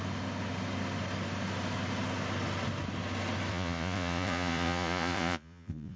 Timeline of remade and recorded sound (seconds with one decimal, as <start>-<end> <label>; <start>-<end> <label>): 0.0-3.5 recorded; 3.5-6.0 remade